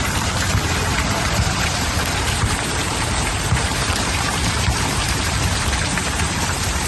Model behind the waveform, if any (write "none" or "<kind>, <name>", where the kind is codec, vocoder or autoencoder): vocoder, BigVGAN v2